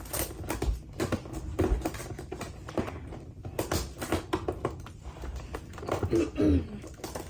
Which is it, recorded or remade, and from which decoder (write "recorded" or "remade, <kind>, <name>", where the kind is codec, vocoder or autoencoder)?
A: recorded